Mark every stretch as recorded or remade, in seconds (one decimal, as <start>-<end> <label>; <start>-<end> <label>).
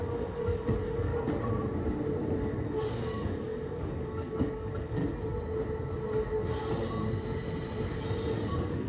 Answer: 0.0-1.1 remade; 1.1-2.2 recorded; 2.2-5.0 remade; 5.0-8.5 recorded; 8.5-8.9 remade